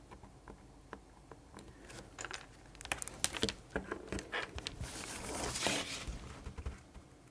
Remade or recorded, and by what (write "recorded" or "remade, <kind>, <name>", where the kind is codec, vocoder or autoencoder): recorded